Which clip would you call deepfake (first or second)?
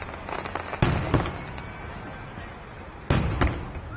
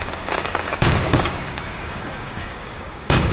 second